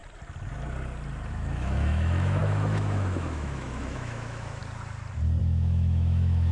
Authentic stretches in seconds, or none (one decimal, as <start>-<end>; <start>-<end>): 0.0-1.3; 4.6-5.4